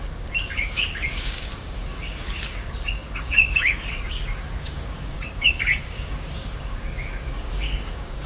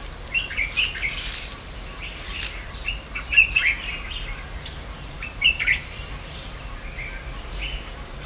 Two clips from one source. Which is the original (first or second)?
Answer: second